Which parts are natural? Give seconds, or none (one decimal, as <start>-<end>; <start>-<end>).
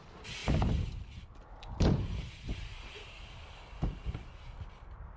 0.0-5.2